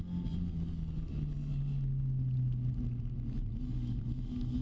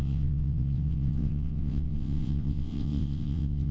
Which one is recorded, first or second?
first